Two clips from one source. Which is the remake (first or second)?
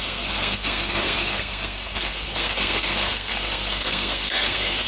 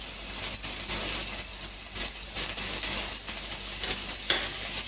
first